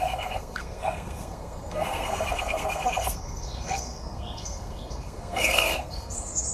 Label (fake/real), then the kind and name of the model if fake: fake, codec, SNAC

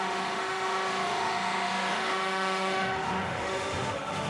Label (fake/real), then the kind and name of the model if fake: fake, autoencoder, DAC-VAE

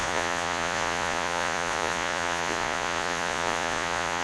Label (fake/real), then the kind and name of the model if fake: fake, vocoder, Vocos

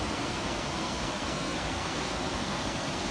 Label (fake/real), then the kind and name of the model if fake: fake, codec, SNAC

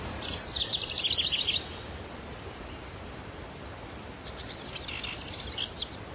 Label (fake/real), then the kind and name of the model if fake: real